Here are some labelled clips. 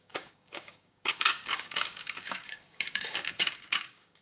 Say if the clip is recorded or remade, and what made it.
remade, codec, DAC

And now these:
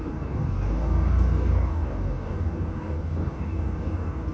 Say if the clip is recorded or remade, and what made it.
remade, codec, DAC